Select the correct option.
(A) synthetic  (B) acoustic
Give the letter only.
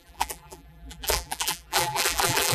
A